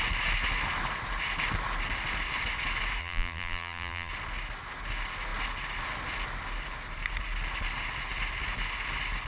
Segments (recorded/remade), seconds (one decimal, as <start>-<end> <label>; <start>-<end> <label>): 0.0-3.0 recorded; 3.0-4.1 remade; 4.1-9.3 recorded